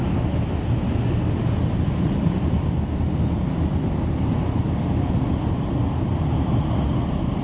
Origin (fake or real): real